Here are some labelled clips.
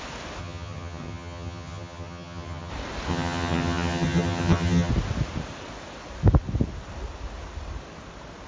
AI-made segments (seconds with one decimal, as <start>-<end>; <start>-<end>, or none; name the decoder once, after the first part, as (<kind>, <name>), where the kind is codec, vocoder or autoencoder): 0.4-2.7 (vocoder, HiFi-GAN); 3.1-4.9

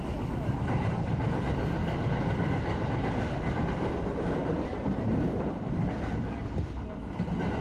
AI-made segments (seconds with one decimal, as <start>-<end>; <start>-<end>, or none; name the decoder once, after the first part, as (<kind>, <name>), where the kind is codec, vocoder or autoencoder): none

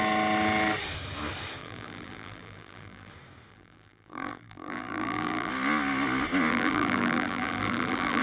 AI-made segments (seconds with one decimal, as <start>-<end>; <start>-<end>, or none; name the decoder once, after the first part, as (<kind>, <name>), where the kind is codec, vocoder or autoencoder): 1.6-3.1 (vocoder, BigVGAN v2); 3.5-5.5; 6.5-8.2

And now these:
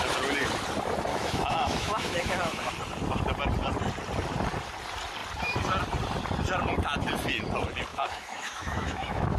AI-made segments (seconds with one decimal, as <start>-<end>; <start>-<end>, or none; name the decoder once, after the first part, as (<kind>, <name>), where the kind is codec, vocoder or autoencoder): 1.1-2.7 (autoencoder, DAC-VAE); 7.9-9.4

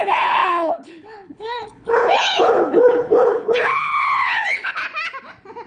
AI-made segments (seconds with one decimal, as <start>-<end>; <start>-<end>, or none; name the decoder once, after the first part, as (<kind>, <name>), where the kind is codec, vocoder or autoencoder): 0.0-4.8 (codec, HILCodec)

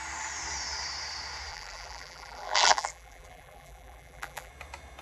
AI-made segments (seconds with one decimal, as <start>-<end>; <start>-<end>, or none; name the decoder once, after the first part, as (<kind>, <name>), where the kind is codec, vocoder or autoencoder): 1.5-4.5 (vocoder, BigVGAN v2)

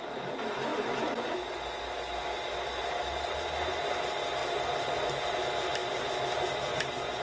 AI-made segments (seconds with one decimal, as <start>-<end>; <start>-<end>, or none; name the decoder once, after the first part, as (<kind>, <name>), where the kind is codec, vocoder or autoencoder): 2.8-3.7 (vocoder, BigVGAN v2); 4.4-5.0